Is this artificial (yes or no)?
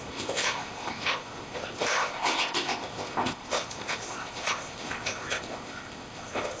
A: yes